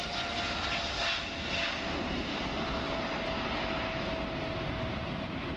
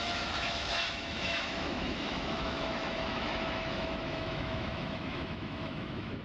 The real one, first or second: first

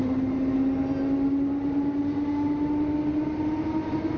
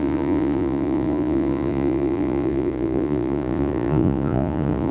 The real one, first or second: first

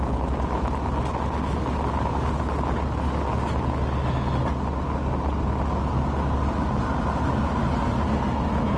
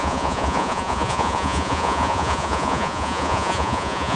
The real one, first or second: first